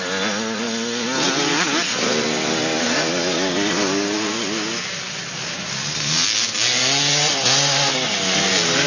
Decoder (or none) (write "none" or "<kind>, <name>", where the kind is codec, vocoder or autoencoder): none